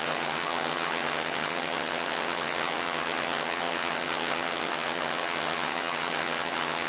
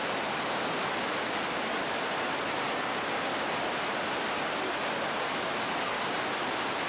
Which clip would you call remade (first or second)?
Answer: first